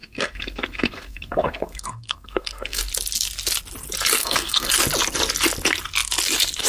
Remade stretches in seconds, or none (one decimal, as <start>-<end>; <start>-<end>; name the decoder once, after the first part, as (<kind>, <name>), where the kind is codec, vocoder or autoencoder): 0.0-2.8 (codec, SNAC); 4.2-4.7

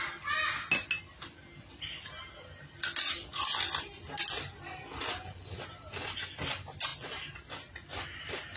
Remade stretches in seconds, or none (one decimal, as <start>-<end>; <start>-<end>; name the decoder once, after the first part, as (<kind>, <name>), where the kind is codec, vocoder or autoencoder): none

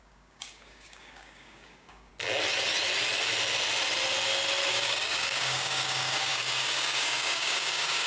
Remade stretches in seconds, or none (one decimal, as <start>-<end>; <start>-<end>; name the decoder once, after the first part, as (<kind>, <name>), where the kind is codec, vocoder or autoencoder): 0.0-2.1 (codec, DAC); 4.7-8.1

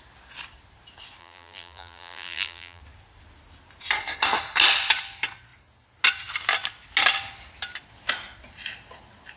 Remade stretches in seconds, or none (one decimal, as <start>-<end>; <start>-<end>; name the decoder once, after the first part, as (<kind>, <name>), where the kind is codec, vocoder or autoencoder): 1.2-2.8 (vocoder, BigVGAN v2)

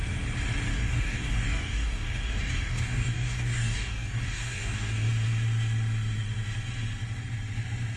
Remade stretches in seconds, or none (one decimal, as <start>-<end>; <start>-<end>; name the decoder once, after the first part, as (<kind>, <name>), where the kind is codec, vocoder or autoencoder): 0.7-5.1 (codec, DAC)

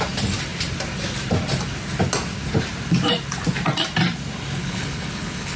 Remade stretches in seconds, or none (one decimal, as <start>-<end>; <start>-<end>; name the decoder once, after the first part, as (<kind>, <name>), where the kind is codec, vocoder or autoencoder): 4.6-5.6 (codec, HILCodec)

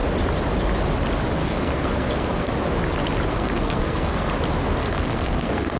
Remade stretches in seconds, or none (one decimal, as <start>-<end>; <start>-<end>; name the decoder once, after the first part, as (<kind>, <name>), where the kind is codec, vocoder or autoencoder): 1.4-2.5 (codec, SNAC); 3.3-4.3; 4.8-5.8

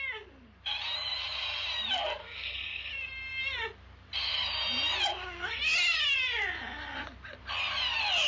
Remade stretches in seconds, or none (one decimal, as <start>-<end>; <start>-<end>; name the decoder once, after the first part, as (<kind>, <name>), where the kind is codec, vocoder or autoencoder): 2.2-2.9 (codec, SNAC)